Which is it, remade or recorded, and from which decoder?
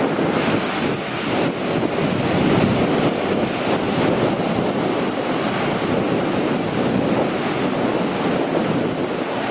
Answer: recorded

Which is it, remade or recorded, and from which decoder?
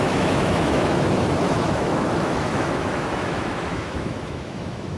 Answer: remade, autoencoder, DAC-VAE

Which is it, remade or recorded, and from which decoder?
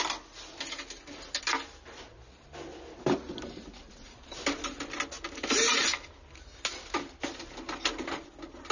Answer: recorded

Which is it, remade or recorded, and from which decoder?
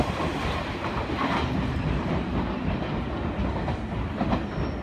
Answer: recorded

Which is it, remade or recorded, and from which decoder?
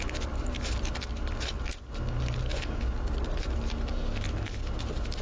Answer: recorded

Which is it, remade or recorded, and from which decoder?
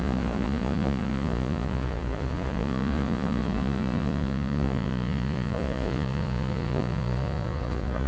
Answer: remade, vocoder, Vocos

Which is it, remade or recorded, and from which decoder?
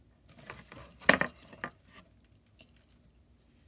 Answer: recorded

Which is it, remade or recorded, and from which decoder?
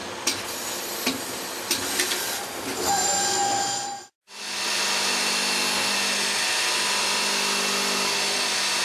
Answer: recorded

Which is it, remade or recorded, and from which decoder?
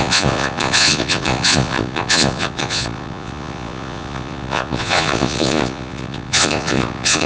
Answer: remade, vocoder, Vocos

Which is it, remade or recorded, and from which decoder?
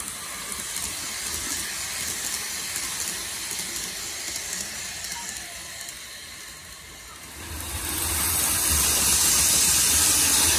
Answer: recorded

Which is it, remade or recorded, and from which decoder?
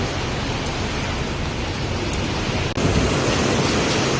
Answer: recorded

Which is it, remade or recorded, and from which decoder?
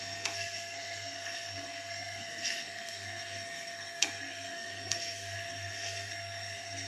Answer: remade, codec, SNAC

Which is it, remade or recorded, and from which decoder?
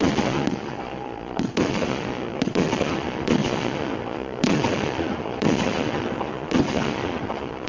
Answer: remade, vocoder, Vocos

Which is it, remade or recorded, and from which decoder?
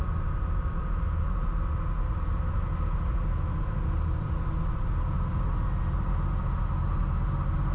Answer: recorded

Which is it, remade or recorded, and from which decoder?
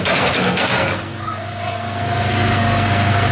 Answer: remade, codec, SNAC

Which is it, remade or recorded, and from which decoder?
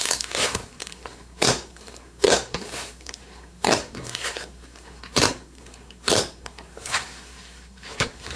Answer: remade, codec, SNAC